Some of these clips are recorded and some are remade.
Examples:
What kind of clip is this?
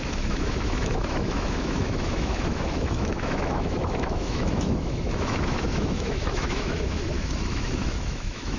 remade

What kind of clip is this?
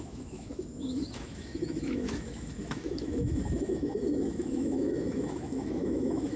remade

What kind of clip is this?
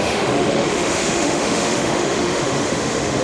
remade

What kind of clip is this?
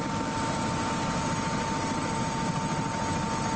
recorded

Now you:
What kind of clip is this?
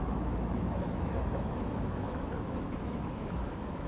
remade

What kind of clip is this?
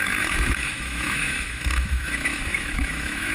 remade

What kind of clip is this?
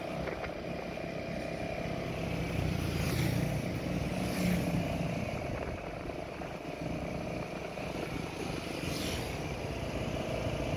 recorded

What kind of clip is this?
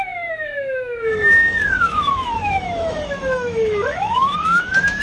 remade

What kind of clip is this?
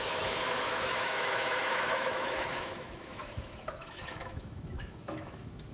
remade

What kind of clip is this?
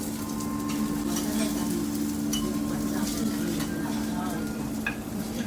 recorded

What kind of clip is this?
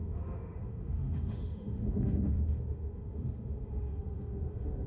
remade